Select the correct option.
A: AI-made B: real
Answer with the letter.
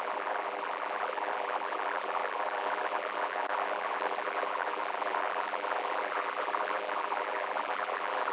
A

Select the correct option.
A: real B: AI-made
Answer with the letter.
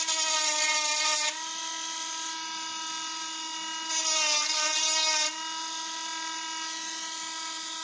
A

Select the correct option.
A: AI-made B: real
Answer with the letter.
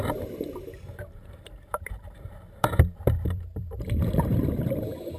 A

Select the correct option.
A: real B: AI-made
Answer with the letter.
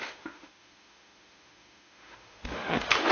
B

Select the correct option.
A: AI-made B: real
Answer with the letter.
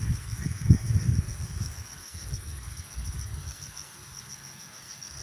A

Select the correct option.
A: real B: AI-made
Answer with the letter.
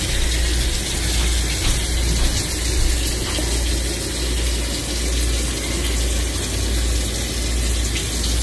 A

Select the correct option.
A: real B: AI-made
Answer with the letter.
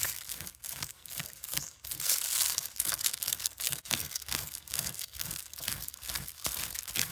B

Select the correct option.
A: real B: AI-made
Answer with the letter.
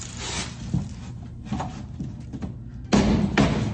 A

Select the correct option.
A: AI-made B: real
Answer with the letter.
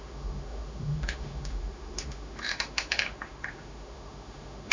A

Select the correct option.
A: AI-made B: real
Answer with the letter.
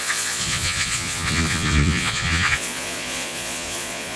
A